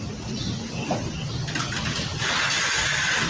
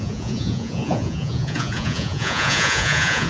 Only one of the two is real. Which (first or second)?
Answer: first